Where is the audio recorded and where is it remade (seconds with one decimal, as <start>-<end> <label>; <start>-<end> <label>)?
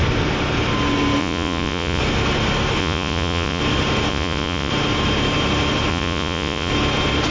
0.0-1.2 recorded; 1.2-2.0 remade; 2.0-2.8 recorded; 2.8-3.6 remade; 3.6-4.1 recorded; 4.1-4.7 remade; 4.7-5.9 recorded; 5.9-6.7 remade; 6.7-7.3 recorded